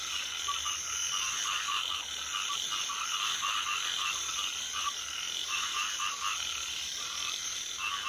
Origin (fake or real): real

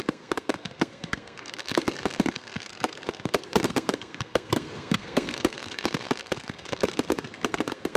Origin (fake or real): fake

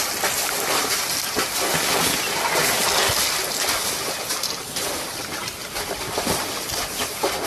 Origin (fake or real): real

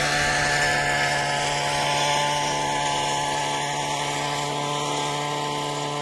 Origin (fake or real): real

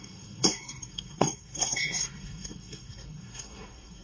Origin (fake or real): fake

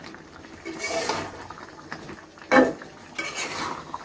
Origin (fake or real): real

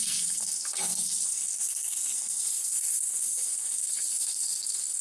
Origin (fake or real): fake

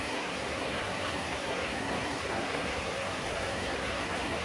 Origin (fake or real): fake